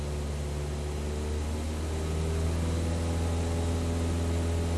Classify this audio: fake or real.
real